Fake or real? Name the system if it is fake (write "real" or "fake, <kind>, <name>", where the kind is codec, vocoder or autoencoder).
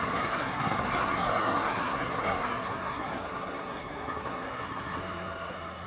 fake, codec, SNAC